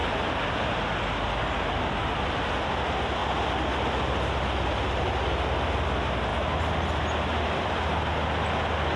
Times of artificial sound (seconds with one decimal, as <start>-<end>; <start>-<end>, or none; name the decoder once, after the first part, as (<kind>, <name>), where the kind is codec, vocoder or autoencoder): none